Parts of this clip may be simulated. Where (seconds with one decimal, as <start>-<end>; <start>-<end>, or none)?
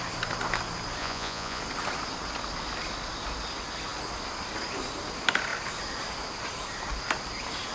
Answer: 1.0-1.6